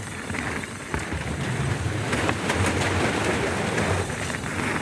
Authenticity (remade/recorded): recorded